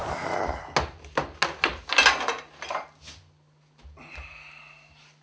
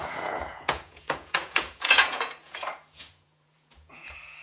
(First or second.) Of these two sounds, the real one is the first